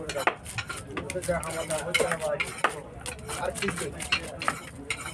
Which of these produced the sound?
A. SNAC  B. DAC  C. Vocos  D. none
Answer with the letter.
D